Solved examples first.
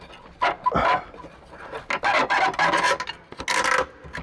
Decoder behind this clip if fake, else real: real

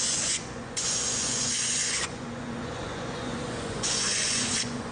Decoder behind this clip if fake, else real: fake, vocoder, Vocos